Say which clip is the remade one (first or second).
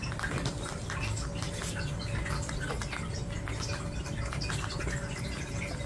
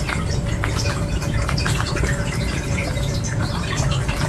second